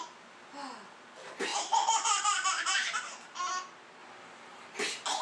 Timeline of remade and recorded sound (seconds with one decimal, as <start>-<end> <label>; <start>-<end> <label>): 0.0-1.5 recorded; 1.5-3.5 remade; 3.5-5.2 recorded